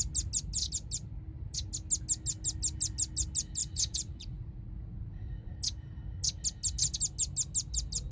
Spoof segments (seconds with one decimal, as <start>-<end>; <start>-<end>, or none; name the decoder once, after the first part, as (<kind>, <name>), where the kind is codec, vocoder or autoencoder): 3.6-5.5 (vocoder, Vocos)